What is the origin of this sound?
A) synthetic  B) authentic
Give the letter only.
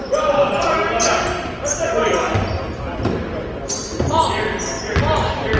B